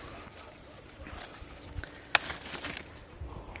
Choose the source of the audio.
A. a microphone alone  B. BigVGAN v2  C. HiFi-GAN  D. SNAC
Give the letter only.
A